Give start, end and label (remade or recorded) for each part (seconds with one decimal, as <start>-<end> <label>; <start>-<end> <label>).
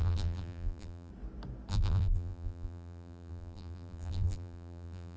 0.0-1.1 remade; 1.1-1.7 recorded; 1.7-5.2 remade